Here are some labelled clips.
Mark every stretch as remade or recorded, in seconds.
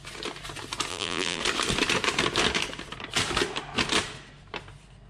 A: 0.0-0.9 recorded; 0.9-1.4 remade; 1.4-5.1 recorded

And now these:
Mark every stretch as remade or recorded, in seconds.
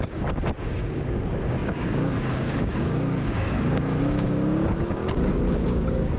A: 0.0-6.2 remade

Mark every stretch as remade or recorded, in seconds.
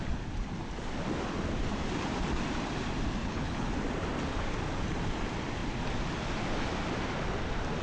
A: 0.0-3.2 recorded; 3.2-3.7 remade; 3.7-7.8 recorded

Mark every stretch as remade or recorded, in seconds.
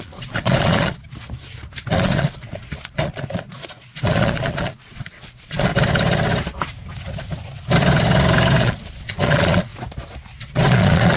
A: 0.0-1.0 remade; 1.0-1.9 recorded; 1.9-5.7 remade; 5.7-8.6 recorded; 8.6-9.7 remade; 9.7-10.4 recorded; 10.4-11.2 remade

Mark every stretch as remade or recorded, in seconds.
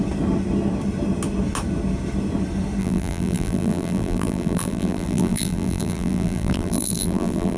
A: 0.0-2.8 recorded; 2.8-7.6 remade